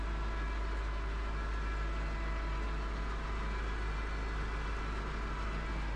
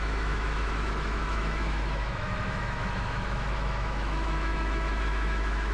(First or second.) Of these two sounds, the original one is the first